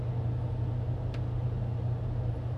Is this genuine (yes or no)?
yes